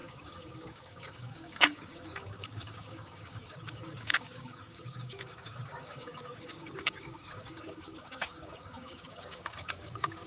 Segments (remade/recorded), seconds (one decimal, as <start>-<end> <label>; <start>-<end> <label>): 0.0-10.3 remade